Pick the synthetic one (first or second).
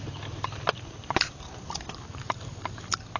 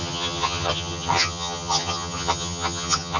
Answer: second